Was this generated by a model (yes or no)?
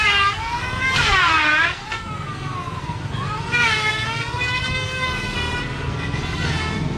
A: yes